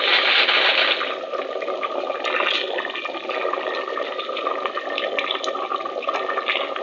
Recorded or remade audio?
recorded